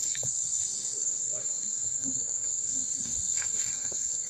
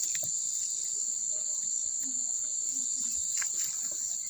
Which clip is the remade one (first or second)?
first